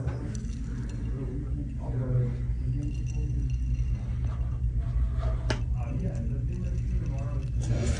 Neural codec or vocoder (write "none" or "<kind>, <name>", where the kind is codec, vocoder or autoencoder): none